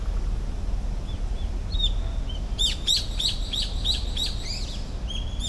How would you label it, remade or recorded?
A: recorded